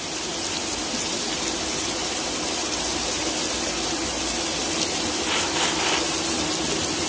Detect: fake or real real